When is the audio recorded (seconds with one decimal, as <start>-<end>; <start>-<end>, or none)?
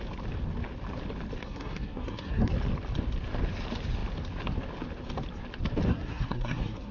0.0-1.4; 2.5-5.9